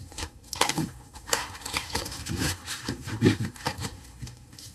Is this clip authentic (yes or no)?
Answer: no